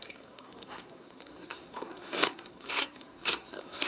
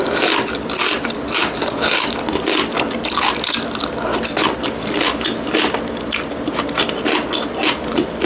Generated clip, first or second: first